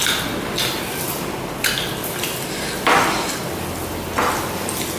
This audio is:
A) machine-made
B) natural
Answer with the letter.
B